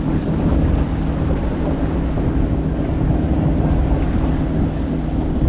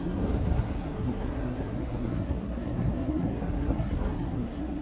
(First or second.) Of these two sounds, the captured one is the first